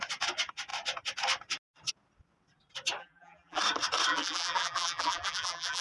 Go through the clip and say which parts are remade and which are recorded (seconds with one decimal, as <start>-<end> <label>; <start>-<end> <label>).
0.0-3.0 recorded; 3.0-3.6 remade; 3.6-4.1 recorded; 4.1-5.8 remade